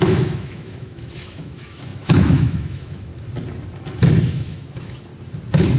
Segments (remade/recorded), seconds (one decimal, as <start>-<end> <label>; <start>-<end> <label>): 0.0-3.1 remade; 3.1-4.2 recorded; 4.2-5.1 remade; 5.1-5.8 recorded